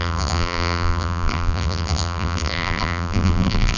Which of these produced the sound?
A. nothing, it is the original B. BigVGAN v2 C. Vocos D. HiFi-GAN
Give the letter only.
B